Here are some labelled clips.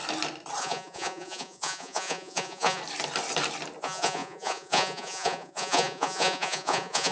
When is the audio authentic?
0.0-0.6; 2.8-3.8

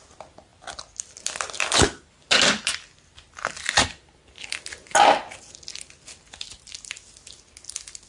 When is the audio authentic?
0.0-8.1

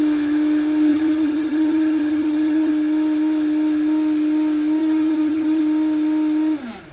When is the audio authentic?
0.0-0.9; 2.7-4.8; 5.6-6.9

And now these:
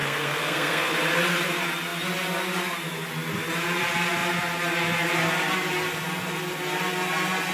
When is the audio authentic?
0.9-7.5

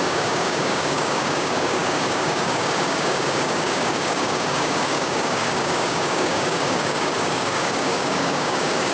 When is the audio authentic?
none